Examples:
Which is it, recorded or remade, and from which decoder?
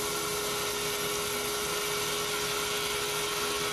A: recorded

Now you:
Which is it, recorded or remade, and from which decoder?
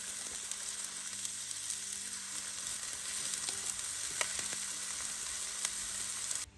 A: recorded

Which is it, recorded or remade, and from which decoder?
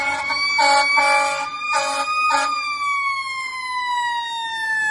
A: recorded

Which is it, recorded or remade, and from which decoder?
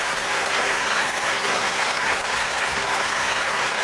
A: remade, codec, SNAC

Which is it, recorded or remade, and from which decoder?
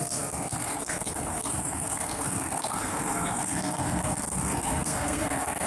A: remade, codec, SNAC